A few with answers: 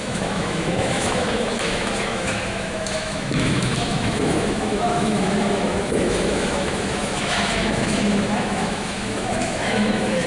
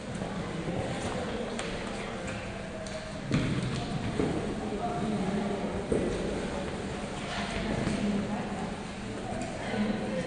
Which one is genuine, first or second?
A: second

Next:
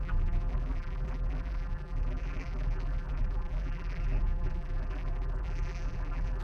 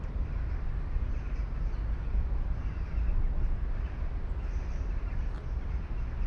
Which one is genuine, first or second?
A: second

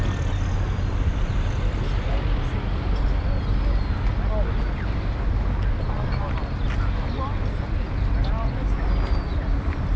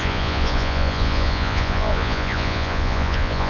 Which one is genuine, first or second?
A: first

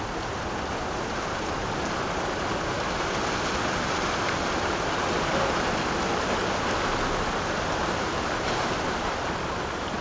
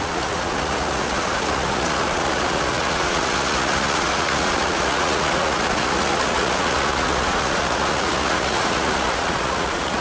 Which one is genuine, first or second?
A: first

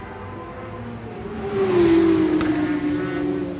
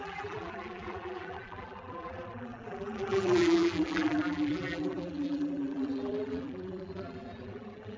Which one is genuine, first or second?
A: first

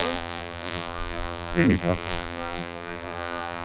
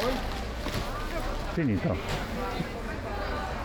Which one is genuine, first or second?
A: second